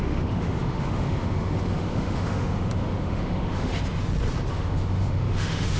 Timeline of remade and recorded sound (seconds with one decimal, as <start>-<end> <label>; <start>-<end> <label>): 0.0-3.7 remade; 3.7-4.5 recorded; 4.5-5.8 remade

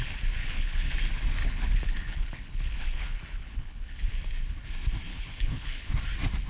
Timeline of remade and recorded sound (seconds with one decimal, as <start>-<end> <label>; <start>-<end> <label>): 0.0-0.4 recorded; 0.4-0.9 remade; 0.9-1.4 recorded; 1.4-4.1 remade; 4.1-5.1 recorded; 5.1-5.9 remade; 5.9-6.5 recorded